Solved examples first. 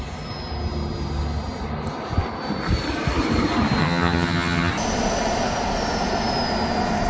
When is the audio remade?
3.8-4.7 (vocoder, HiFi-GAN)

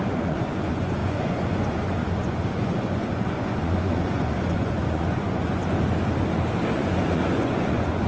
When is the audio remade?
0.0-5.6 (vocoder, Vocos); 6.7-8.1

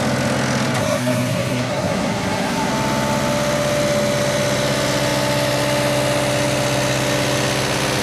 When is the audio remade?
0.8-2.7 (codec, SNAC)

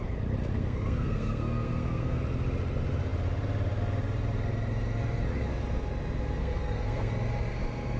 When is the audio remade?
0.5-2.2 (codec, SNAC); 6.4-7.1